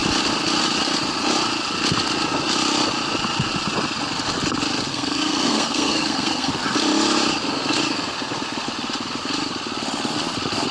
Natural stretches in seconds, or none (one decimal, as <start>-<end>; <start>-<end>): 0.0-4.9; 6.5-10.7